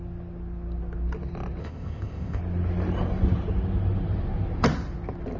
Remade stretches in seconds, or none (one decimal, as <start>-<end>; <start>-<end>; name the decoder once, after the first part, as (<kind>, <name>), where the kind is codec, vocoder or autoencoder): 1.6-2.4 (codec, ZipCodec)